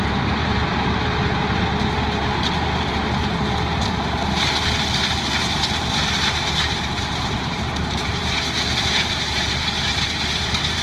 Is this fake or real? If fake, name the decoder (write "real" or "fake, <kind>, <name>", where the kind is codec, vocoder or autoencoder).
fake, vocoder, BigVGAN v2